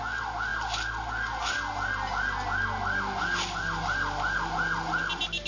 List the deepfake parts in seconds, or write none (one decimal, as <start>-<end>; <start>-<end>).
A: none